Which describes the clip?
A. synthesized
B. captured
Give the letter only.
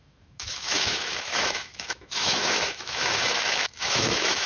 A